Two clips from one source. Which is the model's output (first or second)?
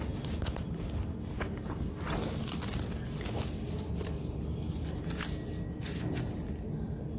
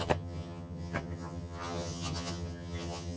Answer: second